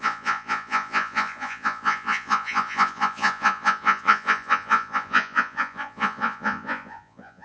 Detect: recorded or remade remade